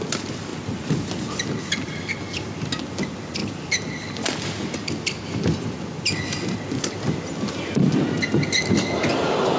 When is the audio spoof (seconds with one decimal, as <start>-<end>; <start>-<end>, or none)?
none